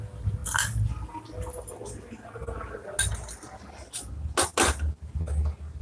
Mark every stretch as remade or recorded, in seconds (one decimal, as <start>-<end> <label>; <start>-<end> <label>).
0.0-5.8 recorded